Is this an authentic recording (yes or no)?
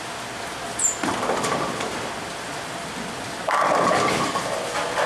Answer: yes